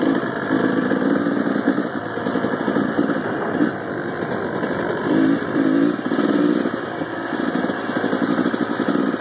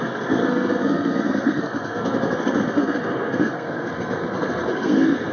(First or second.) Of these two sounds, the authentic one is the first